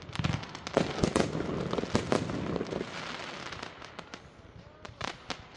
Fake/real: real